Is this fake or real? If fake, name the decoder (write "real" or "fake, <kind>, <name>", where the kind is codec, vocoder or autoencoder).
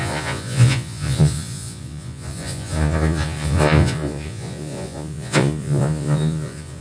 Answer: fake, vocoder, Vocos